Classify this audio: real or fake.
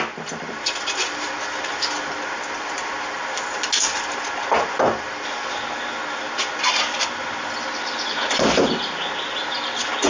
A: real